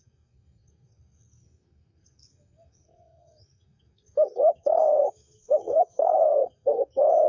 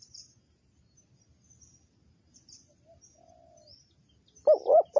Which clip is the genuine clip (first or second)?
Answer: second